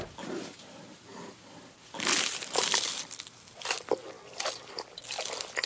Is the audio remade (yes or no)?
yes